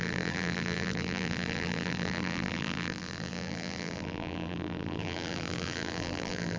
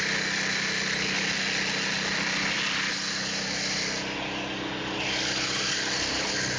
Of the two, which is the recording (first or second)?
second